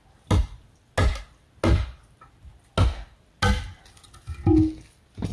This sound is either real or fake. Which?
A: real